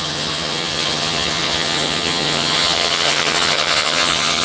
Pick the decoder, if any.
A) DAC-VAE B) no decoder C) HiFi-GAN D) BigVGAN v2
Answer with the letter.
C